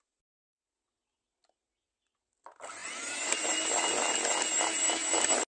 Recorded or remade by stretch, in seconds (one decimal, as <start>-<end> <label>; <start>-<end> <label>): 0.0-5.5 recorded